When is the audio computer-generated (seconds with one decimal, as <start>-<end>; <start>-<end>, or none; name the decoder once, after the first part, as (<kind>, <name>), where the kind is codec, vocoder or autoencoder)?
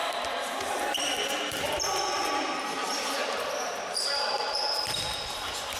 0.0-5.8 (vocoder, BigVGAN v2)